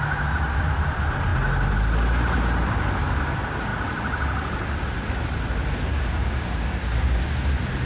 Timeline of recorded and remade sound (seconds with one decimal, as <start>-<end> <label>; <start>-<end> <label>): 0.0-5.9 recorded; 5.9-7.2 remade; 7.2-7.9 recorded